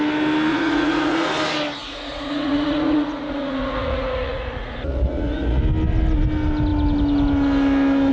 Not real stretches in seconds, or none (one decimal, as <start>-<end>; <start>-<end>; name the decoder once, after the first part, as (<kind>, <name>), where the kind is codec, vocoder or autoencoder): 0.5-1.3 (vocoder, Vocos); 1.8-5.6